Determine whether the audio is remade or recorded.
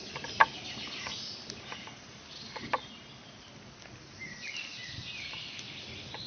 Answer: recorded